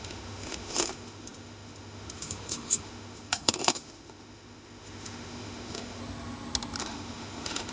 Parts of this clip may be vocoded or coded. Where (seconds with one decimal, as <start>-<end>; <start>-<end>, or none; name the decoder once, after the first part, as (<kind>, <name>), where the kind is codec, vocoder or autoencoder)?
0.0-6.0 (autoencoder, DAC-VAE); 6.8-7.7

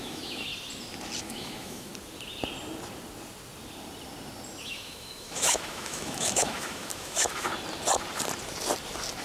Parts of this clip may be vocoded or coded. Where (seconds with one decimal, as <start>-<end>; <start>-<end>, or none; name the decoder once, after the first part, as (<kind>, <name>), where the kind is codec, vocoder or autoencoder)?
0.0-0.5 (autoencoder, DAC-VAE); 1.2-1.9; 4.6-7.5

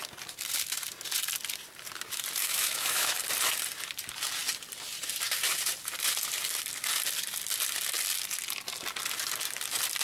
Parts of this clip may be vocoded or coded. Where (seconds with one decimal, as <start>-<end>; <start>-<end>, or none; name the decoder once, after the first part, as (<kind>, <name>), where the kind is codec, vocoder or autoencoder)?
2.4-3.2 (autoencoder, DAC-VAE)

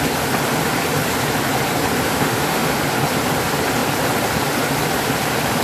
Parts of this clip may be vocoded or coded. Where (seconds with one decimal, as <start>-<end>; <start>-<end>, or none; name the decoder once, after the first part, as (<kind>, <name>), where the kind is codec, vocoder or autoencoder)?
2.1-2.8 (autoencoder, DAC-VAE)